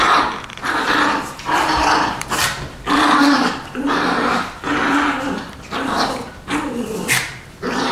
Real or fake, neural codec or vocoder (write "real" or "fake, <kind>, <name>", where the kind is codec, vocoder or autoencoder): fake, vocoder, BigVGAN v2